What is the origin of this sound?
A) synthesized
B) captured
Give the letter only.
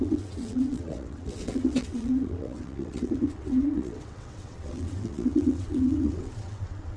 A